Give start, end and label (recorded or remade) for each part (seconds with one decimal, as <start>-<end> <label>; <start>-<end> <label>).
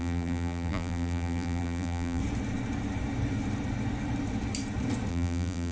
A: 0.0-2.2 remade; 2.2-5.1 recorded; 5.1-5.7 remade